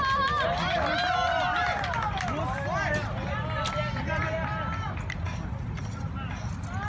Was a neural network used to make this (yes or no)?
no